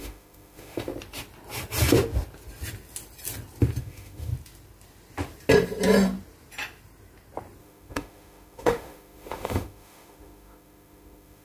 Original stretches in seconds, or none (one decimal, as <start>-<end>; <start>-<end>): 0.9-3.8; 4.3-7.6